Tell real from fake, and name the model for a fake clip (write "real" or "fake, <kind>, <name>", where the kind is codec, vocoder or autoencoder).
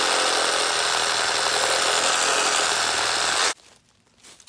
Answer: real